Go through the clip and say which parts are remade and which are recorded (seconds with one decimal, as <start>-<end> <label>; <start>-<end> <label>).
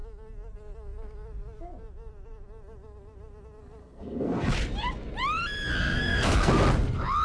0.0-3.8 recorded; 3.8-4.5 remade; 4.5-5.8 recorded; 5.8-6.5 remade; 6.5-7.2 recorded